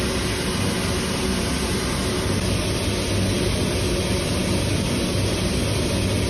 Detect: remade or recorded recorded